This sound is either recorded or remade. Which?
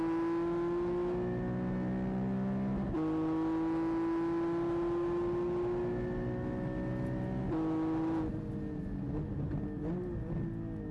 recorded